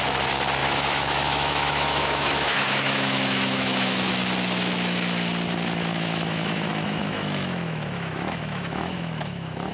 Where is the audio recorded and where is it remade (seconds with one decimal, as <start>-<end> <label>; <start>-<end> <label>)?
0.0-0.6 recorded; 0.6-4.1 remade; 4.1-5.9 recorded; 5.9-9.7 remade